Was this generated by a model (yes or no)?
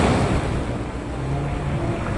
no